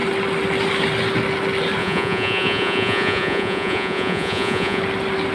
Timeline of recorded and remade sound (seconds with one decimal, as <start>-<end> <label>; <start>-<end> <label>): 0.0-1.8 recorded; 1.8-4.8 remade; 4.8-5.3 recorded